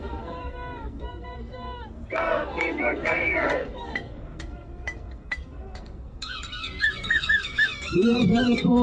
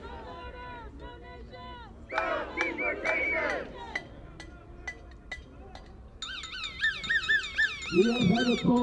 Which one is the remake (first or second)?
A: first